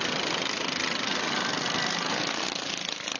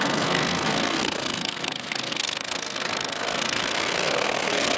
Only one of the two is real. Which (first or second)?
first